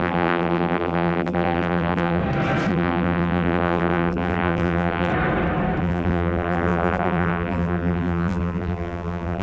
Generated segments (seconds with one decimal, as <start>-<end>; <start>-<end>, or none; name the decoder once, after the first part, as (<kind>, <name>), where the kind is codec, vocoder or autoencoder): 0.0-2.2 (vocoder, BigVGAN v2); 2.7-5.1; 5.8-9.4